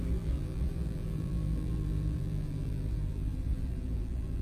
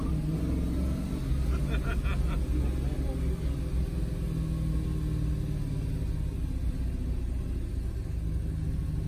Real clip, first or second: second